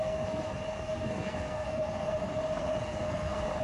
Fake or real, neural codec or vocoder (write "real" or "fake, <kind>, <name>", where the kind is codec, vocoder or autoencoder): fake, codec, SNAC